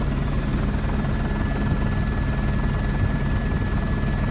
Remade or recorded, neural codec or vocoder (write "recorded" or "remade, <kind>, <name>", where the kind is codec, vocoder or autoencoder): recorded